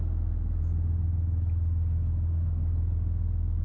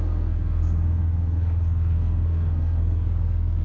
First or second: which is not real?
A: second